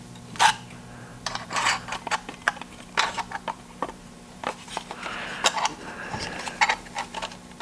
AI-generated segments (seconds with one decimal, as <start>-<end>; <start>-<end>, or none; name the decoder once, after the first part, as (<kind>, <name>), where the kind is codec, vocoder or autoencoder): 1.1-4.7 (vocoder, BigVGAN v2)

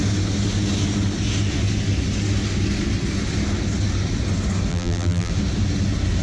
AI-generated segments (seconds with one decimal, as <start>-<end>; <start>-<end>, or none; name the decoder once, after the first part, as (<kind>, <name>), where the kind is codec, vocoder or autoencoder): 4.7-5.3 (vocoder, BigVGAN v2)

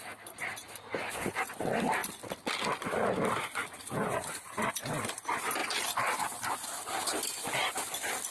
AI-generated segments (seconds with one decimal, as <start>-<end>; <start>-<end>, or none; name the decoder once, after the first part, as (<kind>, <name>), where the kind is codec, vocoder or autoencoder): 0.0-8.3 (vocoder, BigVGAN v2)

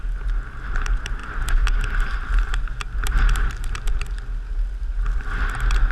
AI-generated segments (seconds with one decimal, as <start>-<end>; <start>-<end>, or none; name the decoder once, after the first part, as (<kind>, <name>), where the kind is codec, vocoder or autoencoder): none

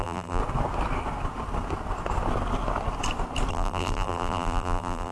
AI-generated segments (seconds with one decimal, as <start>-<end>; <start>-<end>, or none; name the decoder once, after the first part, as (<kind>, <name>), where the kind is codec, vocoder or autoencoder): 0.0-0.4 (vocoder, BigVGAN v2); 3.5-5.1

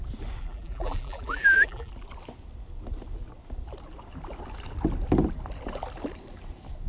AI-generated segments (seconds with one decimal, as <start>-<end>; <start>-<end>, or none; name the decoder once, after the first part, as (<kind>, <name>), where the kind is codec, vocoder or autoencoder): 0.4-1.9 (vocoder, BigVGAN v2)

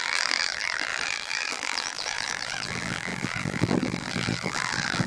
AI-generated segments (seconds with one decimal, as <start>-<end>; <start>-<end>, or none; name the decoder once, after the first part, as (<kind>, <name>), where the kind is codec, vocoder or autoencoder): 0.0-5.1 (vocoder, BigVGAN v2)